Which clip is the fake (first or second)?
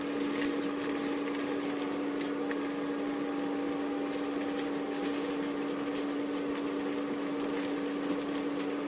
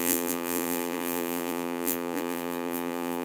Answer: second